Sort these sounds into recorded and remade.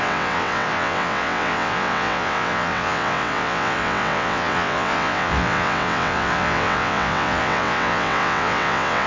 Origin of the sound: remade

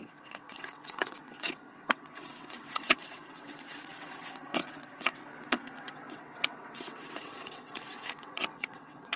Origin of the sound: remade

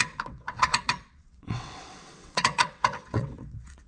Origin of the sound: remade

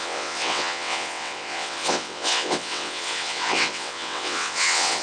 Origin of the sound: remade